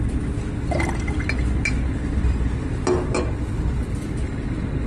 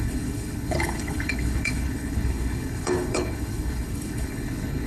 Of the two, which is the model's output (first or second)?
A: second